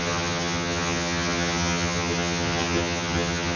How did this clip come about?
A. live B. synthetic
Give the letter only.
B